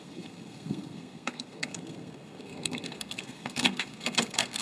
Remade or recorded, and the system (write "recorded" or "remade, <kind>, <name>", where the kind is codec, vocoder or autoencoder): remade, codec, SNAC